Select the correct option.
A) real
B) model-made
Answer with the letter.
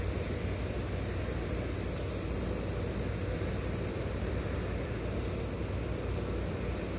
A